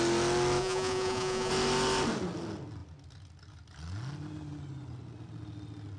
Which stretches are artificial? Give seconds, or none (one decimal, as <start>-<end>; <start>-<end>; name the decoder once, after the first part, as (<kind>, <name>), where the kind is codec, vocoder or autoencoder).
0.6-1.5 (vocoder, Vocos)